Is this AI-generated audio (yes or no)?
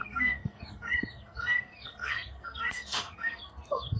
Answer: yes